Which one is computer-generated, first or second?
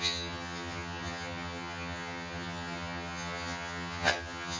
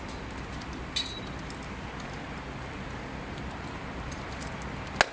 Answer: first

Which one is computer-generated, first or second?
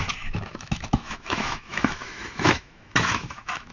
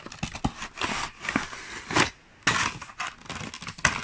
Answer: first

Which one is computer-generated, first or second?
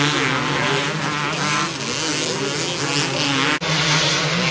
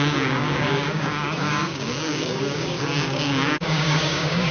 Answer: second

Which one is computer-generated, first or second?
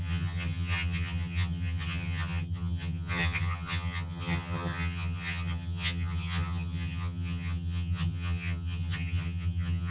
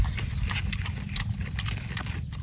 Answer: first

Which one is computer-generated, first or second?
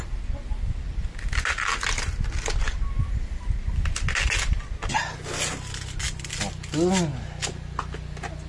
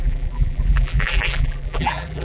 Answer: second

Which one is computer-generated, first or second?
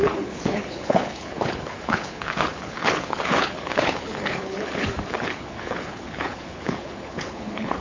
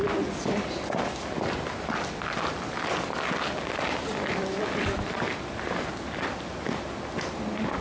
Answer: first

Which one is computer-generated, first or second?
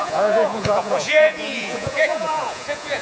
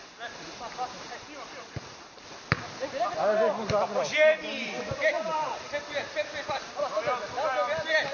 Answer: first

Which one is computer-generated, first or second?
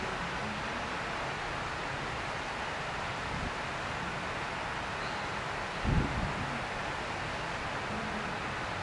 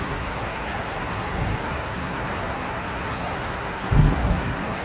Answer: second